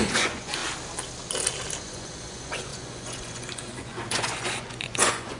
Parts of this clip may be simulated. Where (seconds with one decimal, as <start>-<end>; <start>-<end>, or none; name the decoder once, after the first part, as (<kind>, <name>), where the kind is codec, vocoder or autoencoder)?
0.0-0.6 (vocoder, Vocos); 1.8-5.4